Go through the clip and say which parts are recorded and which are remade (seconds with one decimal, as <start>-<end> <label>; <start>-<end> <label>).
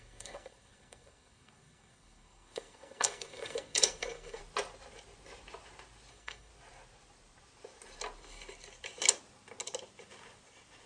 0.0-4.4 remade; 4.4-6.1 recorded; 6.1-6.5 remade; 6.5-10.9 recorded